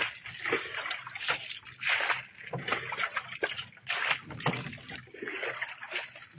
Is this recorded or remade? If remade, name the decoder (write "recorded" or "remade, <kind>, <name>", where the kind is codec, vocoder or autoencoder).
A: recorded